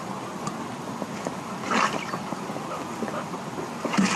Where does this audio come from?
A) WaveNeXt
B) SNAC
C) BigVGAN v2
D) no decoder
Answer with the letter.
D